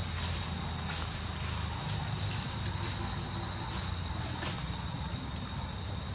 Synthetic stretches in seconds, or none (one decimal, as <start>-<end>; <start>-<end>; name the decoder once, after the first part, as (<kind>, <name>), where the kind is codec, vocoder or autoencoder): none